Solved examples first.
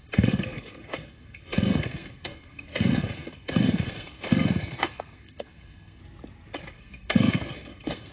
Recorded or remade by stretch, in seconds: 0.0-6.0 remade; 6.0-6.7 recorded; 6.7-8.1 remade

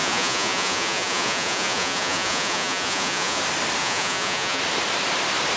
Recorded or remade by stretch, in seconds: 0.0-3.4 remade; 3.4-3.8 recorded; 3.8-4.6 remade; 4.6-5.6 recorded

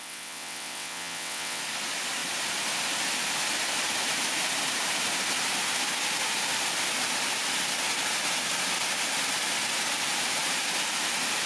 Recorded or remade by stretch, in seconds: 0.0-1.6 remade; 1.6-11.5 recorded